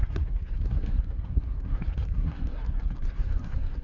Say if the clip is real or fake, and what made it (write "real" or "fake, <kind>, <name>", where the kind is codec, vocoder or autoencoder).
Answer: fake, codec, SNAC